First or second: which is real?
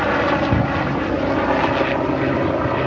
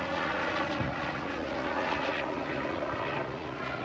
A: first